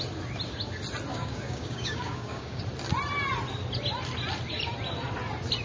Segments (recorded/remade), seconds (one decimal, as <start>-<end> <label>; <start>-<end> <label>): 0.0-1.1 recorded; 1.1-2.6 remade; 2.6-5.6 recorded